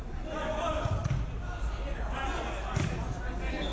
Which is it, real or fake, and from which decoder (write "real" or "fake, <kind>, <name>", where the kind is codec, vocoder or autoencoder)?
real